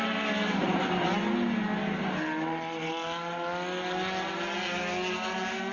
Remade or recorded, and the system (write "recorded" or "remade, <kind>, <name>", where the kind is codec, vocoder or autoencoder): recorded